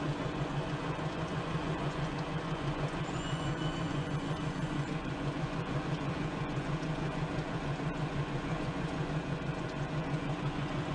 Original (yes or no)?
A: no